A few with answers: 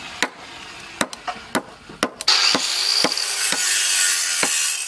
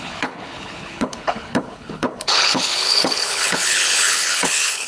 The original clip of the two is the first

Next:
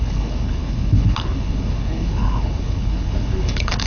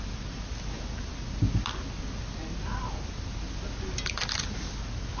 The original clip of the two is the second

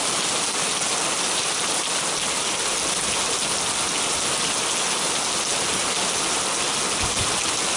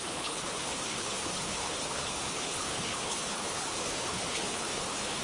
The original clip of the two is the first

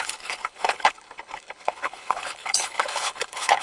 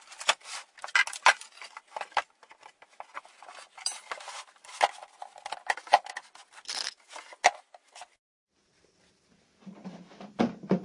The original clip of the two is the second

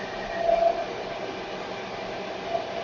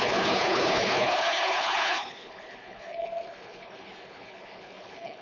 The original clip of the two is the first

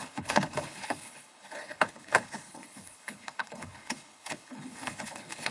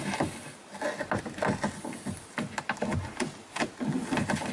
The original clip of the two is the second